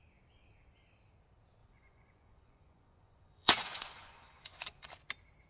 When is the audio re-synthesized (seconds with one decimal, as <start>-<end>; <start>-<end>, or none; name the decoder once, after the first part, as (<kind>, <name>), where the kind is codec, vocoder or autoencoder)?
1.6-4.9 (vocoder, Vocos)